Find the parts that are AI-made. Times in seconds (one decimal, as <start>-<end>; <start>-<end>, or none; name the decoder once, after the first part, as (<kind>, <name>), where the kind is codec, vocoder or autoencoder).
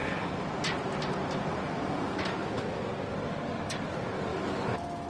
2.4-2.9 (autoencoder, DAC-VAE); 4.3-5.1